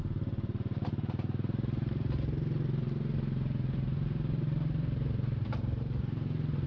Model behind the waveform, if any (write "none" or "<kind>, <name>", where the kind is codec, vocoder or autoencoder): vocoder, BigVGAN v2